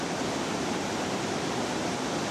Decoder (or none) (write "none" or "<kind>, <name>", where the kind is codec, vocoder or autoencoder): none